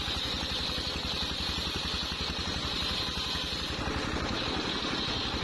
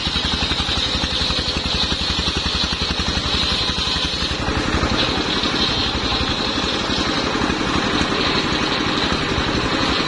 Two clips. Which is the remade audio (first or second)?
first